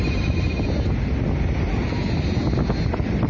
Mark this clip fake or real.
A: real